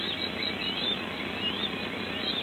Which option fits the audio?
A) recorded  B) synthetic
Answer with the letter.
A